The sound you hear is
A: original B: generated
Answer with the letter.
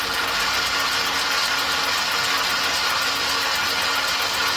A